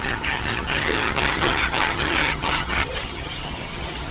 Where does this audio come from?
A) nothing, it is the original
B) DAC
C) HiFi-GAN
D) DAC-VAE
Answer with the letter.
C